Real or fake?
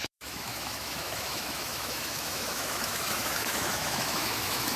fake